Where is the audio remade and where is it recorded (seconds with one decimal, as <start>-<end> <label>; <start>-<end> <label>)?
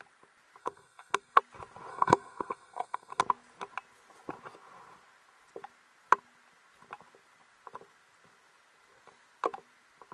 0.0-0.6 recorded; 0.6-1.4 remade; 1.4-1.9 recorded; 1.9-3.2 remade; 3.2-10.1 recorded